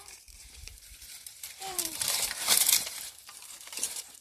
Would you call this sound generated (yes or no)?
yes